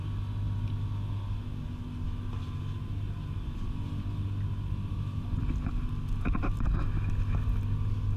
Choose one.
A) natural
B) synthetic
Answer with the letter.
A